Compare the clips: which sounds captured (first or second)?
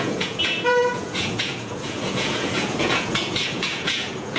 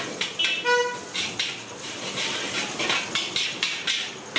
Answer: second